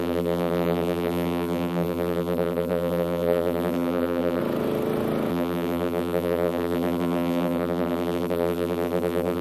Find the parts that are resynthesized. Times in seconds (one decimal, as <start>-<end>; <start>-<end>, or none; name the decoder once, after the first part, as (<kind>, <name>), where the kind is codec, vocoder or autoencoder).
0.0-4.4 (vocoder, BigVGAN v2); 5.3-9.4